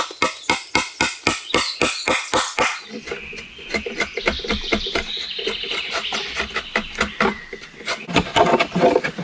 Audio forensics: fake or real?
real